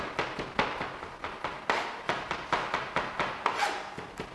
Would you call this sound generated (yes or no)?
no